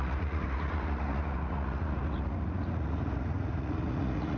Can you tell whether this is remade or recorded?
remade